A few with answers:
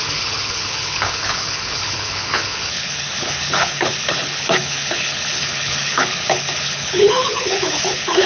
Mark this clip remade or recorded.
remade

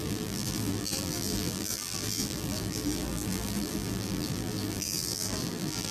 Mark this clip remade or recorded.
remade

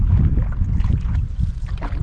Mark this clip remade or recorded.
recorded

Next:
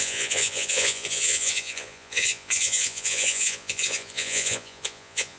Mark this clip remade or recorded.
remade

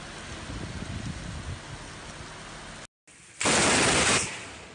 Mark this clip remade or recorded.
recorded